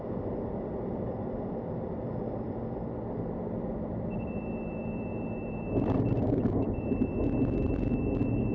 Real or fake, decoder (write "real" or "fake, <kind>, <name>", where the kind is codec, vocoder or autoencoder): fake, vocoder, BigVGAN v2